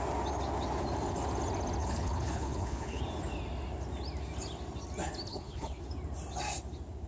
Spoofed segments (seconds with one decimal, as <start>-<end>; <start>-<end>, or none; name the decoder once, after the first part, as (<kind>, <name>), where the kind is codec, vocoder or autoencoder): 1.8-3.0 (codec, HILCodec); 5.3-5.8